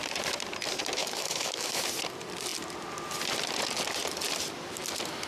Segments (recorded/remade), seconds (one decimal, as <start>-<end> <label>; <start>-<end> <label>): 0.0-1.0 recorded; 1.0-1.8 remade; 1.8-5.3 recorded